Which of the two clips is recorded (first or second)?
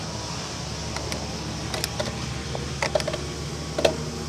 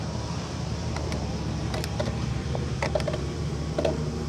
first